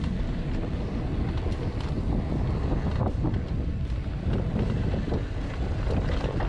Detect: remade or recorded recorded